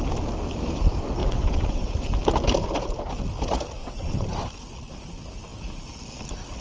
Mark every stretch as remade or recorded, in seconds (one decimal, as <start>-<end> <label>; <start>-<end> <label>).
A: 0.0-1.2 recorded; 1.2-2.1 remade; 2.1-3.8 recorded; 3.8-4.4 remade; 4.4-6.6 recorded